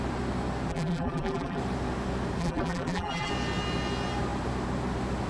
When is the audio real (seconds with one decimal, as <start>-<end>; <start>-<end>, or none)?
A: 0.0-0.7; 1.6-2.4; 3.3-5.3